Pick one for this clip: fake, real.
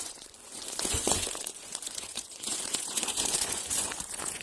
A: fake